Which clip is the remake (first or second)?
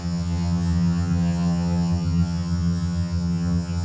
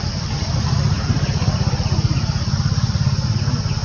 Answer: first